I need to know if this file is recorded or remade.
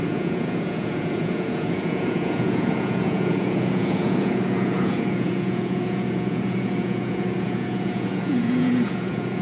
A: remade